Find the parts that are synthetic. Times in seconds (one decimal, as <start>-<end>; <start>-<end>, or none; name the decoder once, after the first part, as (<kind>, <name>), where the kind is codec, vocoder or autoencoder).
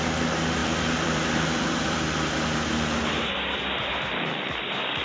0.6-3.6 (vocoder, BigVGAN v2)